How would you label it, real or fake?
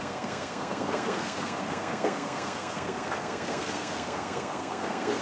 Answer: fake